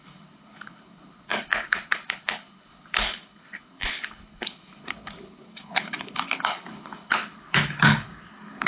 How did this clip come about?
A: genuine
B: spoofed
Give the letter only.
B